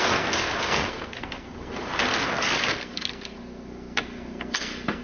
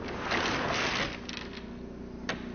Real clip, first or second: second